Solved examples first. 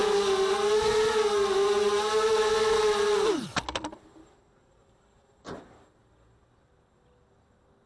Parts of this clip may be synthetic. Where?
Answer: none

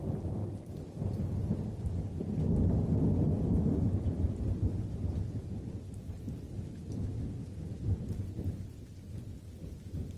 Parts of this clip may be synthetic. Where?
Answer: none

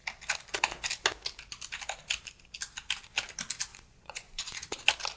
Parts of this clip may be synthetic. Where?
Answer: 3.7-4.8 (vocoder, Vocos)

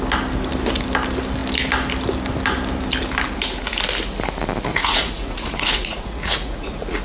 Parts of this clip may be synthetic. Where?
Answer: 4.7-7.0 (vocoder, Vocos)

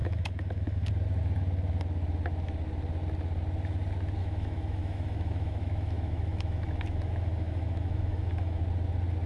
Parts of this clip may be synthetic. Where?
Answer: 0.0-0.9 (autoencoder, DAC-VAE); 4.2-8.6

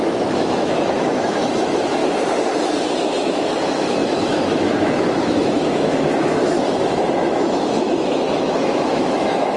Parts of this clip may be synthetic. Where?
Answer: 0.0-2.0 (autoencoder, DAC-VAE); 3.3-9.6

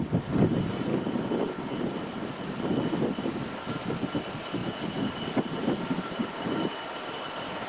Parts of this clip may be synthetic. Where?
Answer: 0.0-7.7 (vocoder, BigVGAN v2)